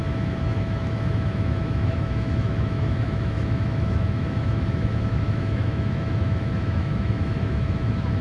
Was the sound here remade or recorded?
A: remade